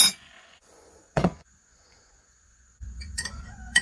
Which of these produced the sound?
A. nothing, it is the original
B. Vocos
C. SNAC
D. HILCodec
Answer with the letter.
B